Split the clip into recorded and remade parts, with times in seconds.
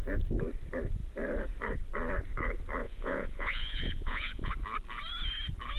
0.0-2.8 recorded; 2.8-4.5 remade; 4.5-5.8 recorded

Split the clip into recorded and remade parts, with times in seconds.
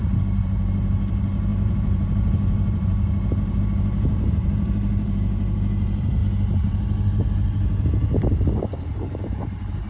0.0-6.2 remade; 6.2-8.2 recorded; 8.2-9.9 remade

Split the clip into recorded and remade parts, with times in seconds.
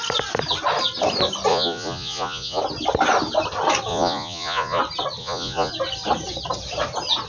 0.0-1.5 recorded; 1.5-2.6 remade; 2.6-3.9 recorded; 3.9-4.8 remade; 4.8-5.2 recorded; 5.2-5.7 remade; 5.7-7.3 recorded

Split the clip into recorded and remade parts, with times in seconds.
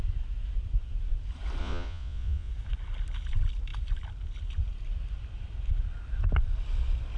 0.0-1.6 recorded; 1.6-2.5 remade; 2.5-7.2 recorded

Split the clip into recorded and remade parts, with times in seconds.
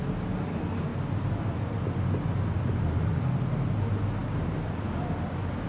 0.0-5.7 recorded